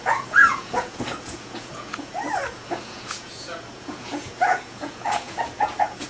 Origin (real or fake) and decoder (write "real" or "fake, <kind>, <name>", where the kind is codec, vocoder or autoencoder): fake, vocoder, Vocos